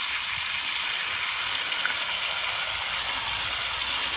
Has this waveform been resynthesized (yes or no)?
no